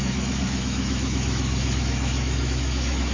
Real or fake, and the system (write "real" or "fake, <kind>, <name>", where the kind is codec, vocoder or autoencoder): fake, autoencoder, DAC-VAE